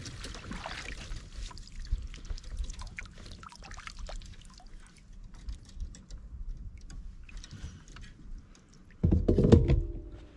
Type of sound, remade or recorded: recorded